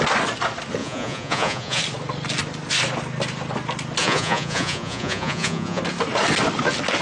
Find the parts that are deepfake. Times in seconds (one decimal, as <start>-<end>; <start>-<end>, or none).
0.8-1.8; 4.0-5.8